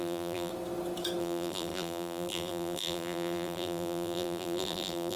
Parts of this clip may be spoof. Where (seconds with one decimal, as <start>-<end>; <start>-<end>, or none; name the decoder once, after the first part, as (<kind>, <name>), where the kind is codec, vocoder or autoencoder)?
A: 0.0-0.5 (vocoder, BigVGAN v2); 1.2-5.2